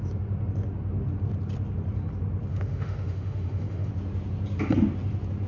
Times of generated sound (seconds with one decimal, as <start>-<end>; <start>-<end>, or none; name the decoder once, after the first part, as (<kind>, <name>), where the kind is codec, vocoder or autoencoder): 2.5-3.9 (autoencoder, DAC-VAE)